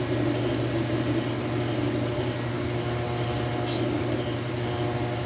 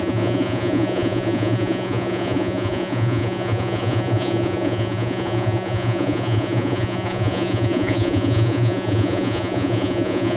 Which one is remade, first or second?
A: second